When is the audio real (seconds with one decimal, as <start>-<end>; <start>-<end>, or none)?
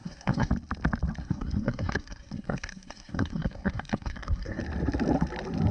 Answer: 0.5-1.2; 4.6-5.7